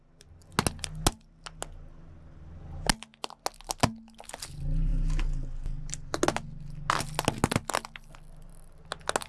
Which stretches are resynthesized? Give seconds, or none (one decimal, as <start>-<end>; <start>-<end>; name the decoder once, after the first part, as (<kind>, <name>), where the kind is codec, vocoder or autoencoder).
none